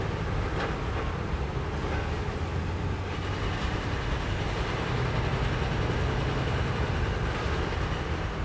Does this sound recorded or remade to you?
recorded